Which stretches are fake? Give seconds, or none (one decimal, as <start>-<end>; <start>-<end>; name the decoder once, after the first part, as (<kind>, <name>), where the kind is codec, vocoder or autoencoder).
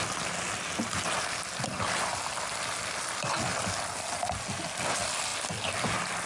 none